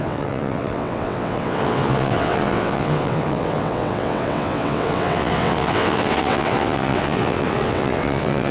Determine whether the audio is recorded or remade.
remade